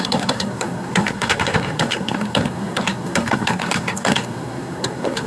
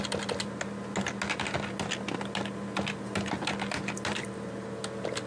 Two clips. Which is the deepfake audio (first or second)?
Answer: first